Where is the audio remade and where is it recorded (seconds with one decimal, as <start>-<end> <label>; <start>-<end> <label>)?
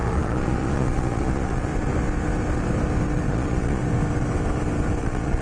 0.0-1.7 remade; 1.7-3.3 recorded; 3.3-3.8 remade; 3.8-5.0 recorded; 5.0-5.4 remade